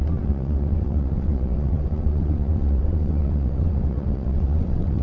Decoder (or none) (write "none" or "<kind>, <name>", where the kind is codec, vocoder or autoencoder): vocoder, WaveNeXt